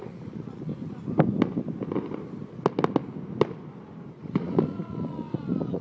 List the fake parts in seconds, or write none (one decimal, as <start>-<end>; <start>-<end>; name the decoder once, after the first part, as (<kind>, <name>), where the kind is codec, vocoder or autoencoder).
0.0-0.7 (vocoder, Vocos); 4.1-5.8